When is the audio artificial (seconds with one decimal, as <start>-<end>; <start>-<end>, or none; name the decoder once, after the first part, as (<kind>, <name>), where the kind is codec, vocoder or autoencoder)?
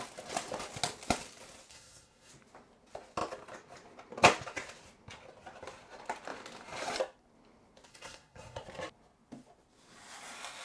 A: 1.7-2.3 (codec, SNAC); 7.9-8.6